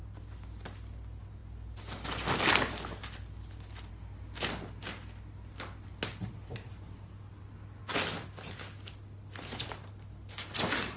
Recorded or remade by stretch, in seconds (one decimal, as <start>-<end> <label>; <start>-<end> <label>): 0.0-11.0 recorded